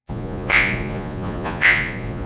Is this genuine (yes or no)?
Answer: no